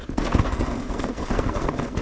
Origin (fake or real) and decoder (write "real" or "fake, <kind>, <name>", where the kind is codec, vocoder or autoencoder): fake, codec, SNAC